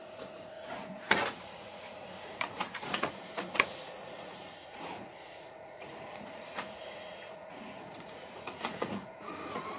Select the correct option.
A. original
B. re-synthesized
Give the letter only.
B